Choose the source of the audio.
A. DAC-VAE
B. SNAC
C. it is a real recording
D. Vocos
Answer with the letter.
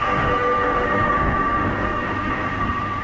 A